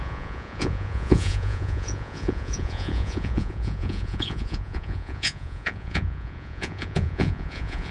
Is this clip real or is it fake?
fake